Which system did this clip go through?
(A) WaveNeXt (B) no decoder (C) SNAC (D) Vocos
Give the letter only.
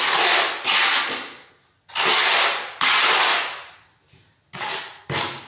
B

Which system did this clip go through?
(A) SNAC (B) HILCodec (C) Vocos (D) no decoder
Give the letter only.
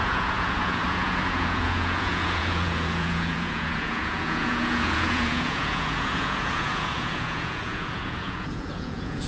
C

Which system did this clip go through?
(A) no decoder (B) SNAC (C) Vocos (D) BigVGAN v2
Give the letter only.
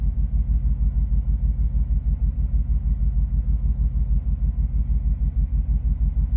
A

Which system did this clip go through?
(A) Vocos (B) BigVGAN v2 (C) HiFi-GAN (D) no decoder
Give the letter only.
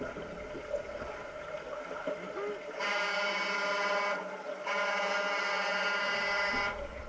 D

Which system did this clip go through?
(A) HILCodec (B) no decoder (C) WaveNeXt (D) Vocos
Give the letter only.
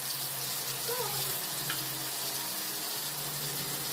B